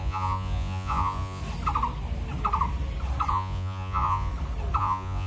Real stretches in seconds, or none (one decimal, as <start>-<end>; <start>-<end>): 1.4-3.3; 4.3-4.8